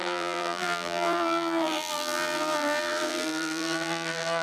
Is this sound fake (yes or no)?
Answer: yes